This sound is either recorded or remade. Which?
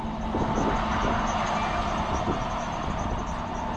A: recorded